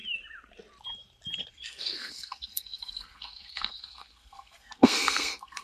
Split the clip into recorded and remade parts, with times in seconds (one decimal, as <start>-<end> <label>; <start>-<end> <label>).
0.0-1.5 recorded; 1.5-5.6 remade